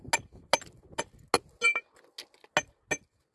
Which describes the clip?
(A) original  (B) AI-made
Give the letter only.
A